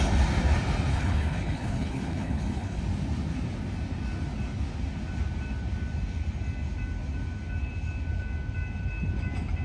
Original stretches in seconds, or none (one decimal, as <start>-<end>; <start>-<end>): 0.0-0.9; 2.8-9.6